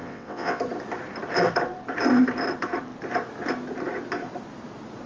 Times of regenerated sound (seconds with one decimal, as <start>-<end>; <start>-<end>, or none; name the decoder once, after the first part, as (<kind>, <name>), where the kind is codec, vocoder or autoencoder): 0.0-0.6 (vocoder, WaveNeXt)